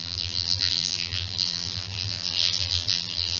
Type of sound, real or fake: fake